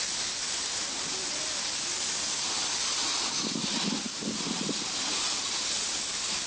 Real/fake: real